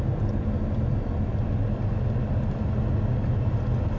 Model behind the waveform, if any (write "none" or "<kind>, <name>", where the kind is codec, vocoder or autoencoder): none